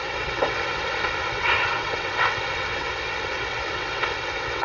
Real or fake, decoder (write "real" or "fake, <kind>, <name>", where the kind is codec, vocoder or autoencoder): fake, vocoder, WaveNeXt